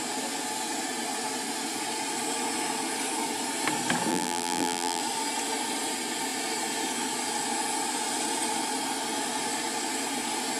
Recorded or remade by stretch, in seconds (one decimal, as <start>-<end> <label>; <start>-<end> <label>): 0.0-4.1 recorded; 4.1-5.0 remade; 5.0-10.6 recorded